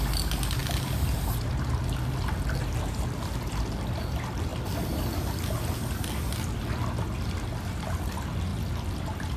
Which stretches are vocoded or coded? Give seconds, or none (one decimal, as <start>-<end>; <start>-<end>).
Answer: none